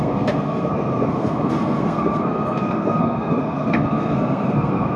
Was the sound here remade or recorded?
remade